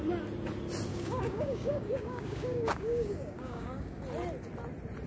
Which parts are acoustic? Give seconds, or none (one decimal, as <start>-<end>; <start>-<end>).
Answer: 0.0-0.9; 4.0-5.1